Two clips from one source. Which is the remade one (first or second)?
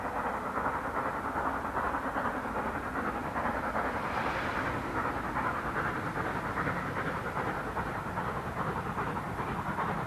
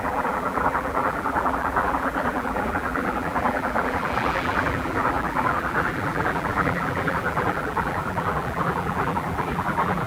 second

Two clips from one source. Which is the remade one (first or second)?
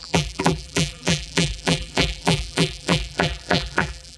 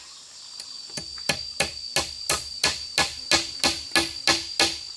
first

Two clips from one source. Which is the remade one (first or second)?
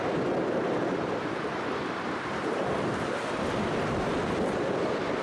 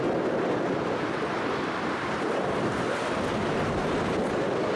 first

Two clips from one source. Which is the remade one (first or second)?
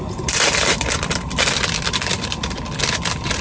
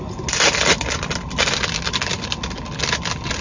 first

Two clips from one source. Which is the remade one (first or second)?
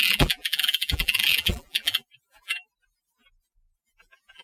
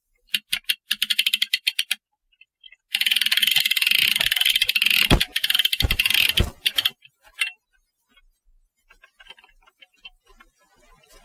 first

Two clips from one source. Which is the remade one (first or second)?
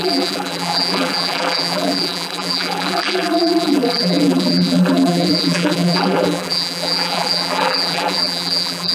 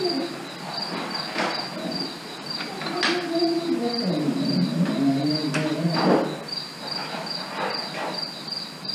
first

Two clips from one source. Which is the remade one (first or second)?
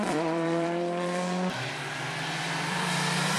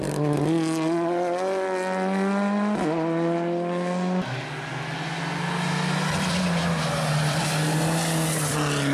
first